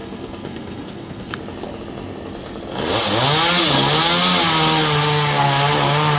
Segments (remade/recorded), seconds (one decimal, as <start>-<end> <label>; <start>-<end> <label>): 0.0-1.4 remade; 1.4-6.2 recorded